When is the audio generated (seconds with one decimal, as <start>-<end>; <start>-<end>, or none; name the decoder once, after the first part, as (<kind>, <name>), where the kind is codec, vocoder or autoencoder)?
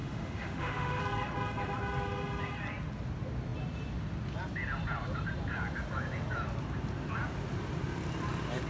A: 0.0-1.0 (autoencoder, DAC-VAE)